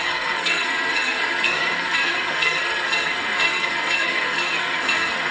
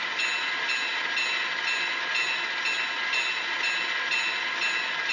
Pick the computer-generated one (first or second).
first